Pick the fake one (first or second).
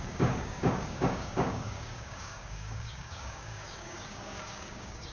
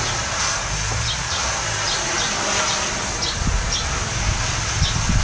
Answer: first